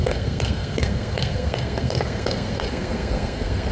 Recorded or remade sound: remade